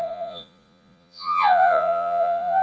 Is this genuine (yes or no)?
no